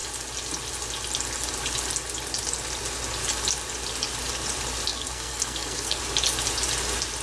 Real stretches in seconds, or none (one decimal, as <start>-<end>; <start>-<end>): 0.0-4.9; 6.0-7.2